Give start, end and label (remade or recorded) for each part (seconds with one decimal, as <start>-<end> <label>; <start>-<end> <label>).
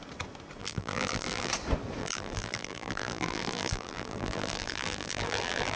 0.0-0.6 recorded; 0.6-1.5 remade; 1.5-2.0 recorded; 2.0-5.8 remade